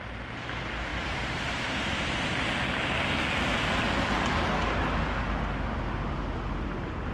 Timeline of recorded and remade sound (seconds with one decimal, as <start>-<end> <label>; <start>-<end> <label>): 0.0-0.9 recorded; 0.9-2.5 remade; 2.5-7.1 recorded

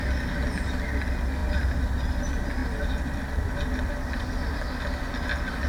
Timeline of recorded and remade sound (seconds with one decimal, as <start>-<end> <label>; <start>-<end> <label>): 0.0-5.7 recorded

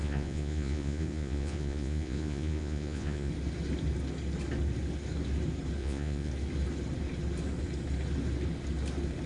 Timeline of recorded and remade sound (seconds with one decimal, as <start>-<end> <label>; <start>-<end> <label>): 0.0-3.3 remade; 3.3-5.8 recorded; 5.8-6.3 remade; 6.3-9.3 recorded

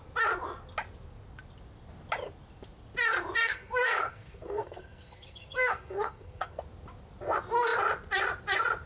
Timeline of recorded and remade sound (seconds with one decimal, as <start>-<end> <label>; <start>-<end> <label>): 0.0-3.4 recorded; 3.4-6.6 remade; 6.6-8.9 recorded

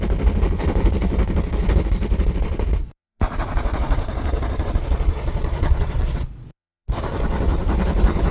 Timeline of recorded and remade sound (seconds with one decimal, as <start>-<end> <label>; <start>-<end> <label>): 0.0-2.8 recorded; 2.8-7.1 remade; 7.1-8.3 recorded

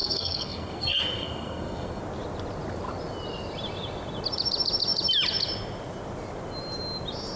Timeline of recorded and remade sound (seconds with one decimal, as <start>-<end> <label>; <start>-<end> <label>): 0.0-2.0 remade; 2.0-7.4 recorded